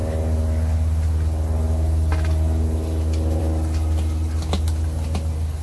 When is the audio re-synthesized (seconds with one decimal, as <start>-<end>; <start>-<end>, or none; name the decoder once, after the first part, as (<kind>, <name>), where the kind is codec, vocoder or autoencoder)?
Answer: none